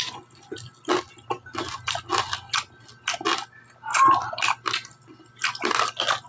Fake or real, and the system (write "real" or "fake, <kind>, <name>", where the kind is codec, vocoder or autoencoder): real